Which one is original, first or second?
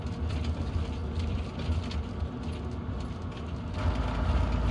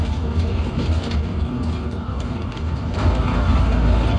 first